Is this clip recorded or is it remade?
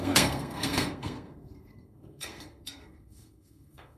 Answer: remade